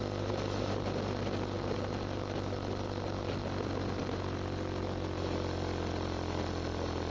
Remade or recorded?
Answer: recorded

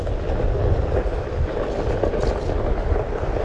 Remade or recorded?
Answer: recorded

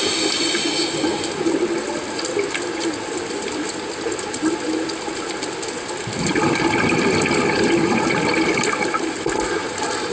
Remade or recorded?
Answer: recorded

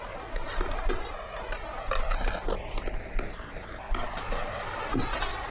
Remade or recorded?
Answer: recorded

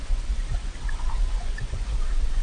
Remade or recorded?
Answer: remade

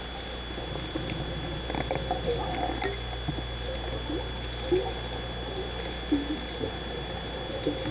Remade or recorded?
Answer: recorded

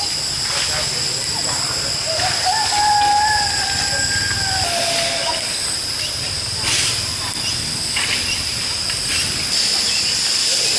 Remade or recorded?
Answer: recorded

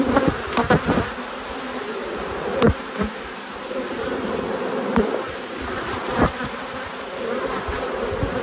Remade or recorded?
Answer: recorded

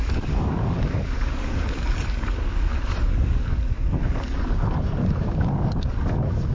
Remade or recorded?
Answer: remade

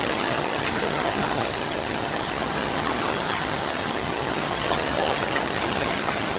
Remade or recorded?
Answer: remade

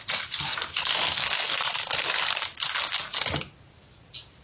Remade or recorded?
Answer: recorded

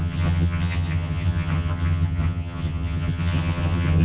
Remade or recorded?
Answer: remade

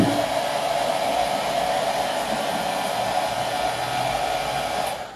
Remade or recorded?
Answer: recorded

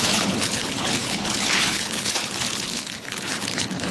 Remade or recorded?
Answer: remade